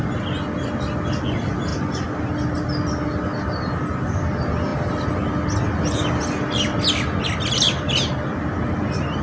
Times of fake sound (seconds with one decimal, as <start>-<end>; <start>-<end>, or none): none